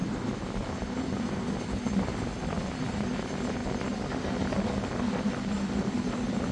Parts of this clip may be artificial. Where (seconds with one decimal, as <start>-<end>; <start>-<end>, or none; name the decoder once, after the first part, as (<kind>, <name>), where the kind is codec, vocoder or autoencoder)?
none